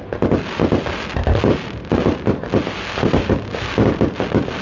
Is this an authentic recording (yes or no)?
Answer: yes